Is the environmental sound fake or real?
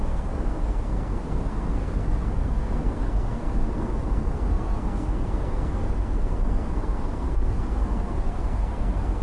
fake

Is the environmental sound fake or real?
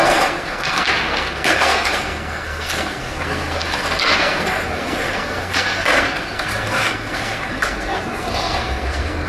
fake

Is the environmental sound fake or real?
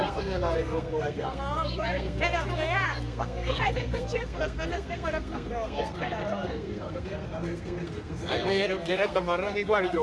fake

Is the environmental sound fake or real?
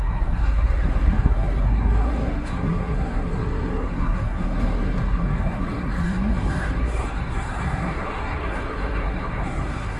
fake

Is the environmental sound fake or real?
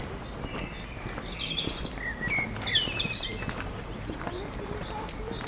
real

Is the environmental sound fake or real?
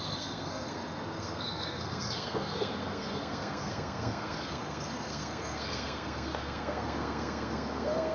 fake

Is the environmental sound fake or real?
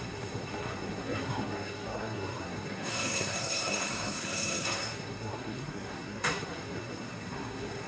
fake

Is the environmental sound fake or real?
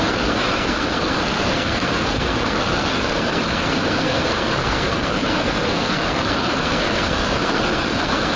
fake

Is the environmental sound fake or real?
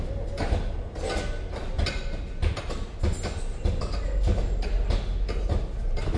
real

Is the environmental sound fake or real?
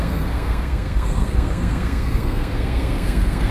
fake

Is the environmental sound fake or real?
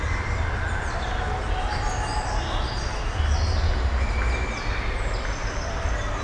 real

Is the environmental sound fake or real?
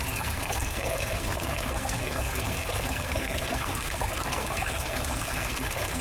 fake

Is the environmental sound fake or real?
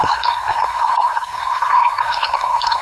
fake